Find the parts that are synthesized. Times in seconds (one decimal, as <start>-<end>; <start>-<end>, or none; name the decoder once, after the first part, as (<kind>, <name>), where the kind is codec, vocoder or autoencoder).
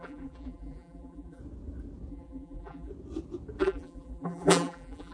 0.0-1.4 (vocoder, BigVGAN v2); 2.1-2.9; 3.6-5.1